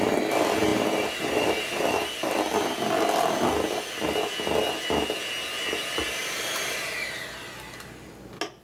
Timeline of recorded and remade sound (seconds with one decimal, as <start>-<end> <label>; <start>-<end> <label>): 0.0-8.6 recorded

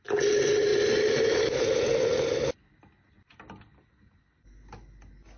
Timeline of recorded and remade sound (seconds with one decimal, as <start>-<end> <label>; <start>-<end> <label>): 0.0-5.4 recorded